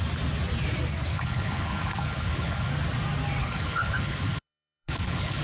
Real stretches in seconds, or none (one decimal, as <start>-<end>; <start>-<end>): 0.0-1.1; 2.7-3.4